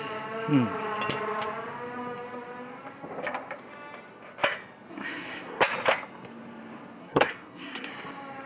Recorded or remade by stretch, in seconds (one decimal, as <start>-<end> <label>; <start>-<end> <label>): 0.0-4.9 recorded; 4.9-5.6 remade; 5.6-7.0 recorded; 7.0-7.9 remade; 7.9-8.5 recorded